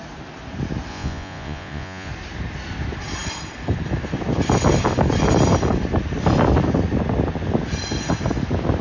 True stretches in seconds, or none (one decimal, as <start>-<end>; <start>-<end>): 0.0-0.9; 2.1-8.8